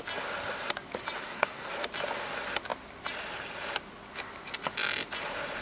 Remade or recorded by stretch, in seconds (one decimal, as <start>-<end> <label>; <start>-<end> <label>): 0.0-1.2 recorded; 1.2-1.7 remade; 1.7-5.6 recorded

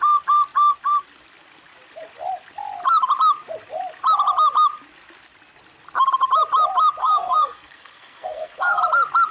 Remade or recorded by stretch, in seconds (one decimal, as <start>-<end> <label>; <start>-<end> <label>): 0.0-7.0 recorded; 7.0-8.8 remade; 8.8-9.3 recorded

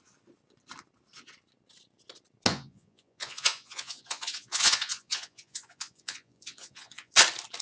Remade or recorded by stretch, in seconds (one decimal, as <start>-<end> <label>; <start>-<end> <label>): 0.0-2.5 recorded; 2.5-7.1 remade; 7.1-7.6 recorded

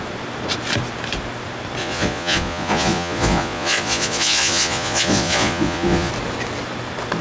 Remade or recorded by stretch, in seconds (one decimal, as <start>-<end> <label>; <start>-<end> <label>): 0.0-1.8 recorded; 1.8-6.1 remade; 6.1-7.2 recorded

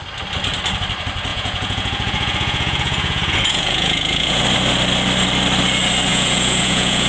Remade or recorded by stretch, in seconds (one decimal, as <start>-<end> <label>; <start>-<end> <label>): 0.0-1.3 recorded; 1.3-4.4 remade; 4.4-6.1 recorded; 6.1-7.1 remade